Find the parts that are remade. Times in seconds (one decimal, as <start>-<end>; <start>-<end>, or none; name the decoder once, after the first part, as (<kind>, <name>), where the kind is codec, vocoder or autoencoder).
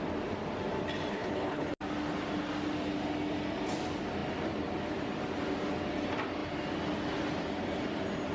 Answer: 1.1-1.7 (codec, HILCodec)